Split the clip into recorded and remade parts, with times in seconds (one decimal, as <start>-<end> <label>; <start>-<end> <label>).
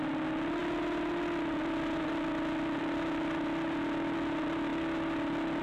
0.0-5.6 recorded